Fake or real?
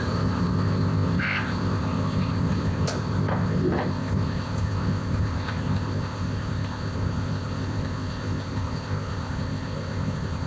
fake